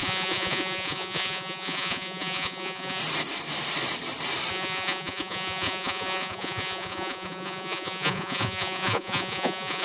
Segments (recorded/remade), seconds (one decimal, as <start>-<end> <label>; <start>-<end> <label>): 0.0-3.0 remade; 3.0-4.5 recorded; 4.5-9.8 remade